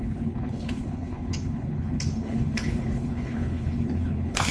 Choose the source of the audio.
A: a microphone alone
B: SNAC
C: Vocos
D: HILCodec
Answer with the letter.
D